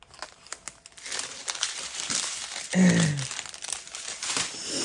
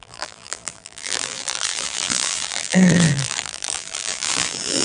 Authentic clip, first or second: first